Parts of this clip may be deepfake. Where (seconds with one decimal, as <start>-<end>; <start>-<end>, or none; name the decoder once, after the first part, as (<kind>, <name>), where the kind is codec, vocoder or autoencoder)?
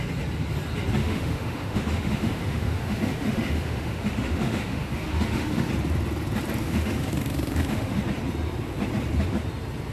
1.0-5.7 (autoencoder, DAC-VAE); 6.6-8.0